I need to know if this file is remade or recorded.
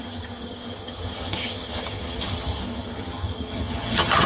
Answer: remade